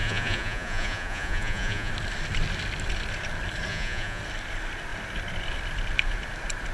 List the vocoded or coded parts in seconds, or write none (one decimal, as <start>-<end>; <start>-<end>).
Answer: 0.0-1.9; 3.7-4.2